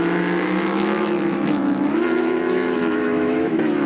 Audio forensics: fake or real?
fake